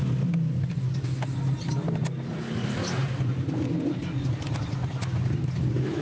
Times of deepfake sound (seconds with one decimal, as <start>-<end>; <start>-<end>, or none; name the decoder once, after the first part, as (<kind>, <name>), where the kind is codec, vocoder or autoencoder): none